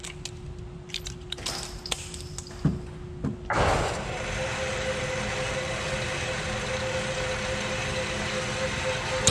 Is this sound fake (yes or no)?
no